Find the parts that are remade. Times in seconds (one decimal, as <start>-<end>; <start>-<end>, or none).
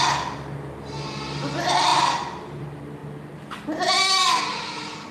none